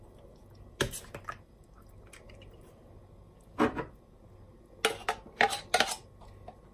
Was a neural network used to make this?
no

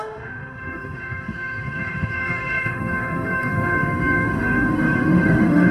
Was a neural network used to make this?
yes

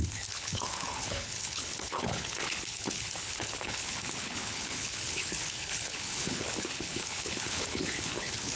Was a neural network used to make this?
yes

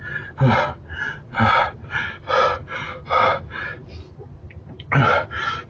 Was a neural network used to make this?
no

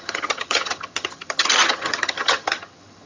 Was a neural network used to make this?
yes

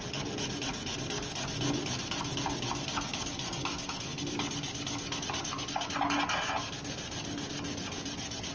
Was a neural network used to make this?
no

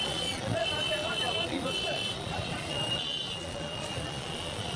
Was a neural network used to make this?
yes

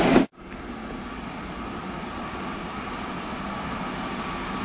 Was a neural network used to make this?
no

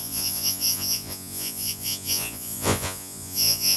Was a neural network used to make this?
yes